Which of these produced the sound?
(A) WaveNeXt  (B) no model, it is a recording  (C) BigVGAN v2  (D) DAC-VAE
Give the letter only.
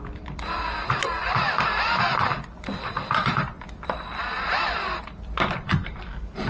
C